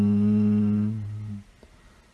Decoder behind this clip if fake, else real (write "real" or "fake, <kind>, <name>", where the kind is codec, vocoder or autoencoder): real